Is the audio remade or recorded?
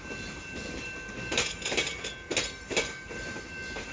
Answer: recorded